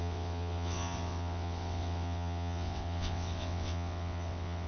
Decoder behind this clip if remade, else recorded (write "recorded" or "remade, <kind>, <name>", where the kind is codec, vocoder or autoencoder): remade, vocoder, WaveNeXt